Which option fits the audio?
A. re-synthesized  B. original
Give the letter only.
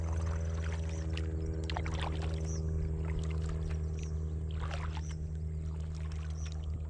B